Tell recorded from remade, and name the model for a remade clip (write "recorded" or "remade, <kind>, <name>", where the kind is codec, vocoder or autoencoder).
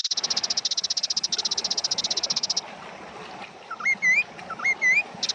recorded